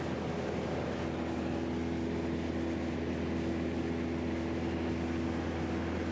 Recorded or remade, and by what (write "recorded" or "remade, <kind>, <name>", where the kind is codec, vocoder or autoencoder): recorded